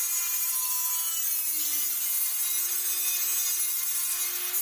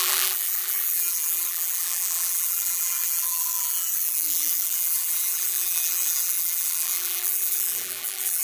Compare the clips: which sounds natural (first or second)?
first